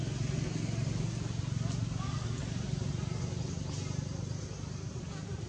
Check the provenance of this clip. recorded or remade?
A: recorded